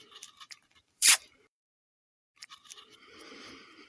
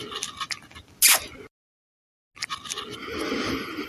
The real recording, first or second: second